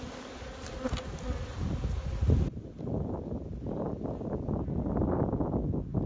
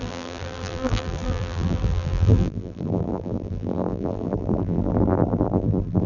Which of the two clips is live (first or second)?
first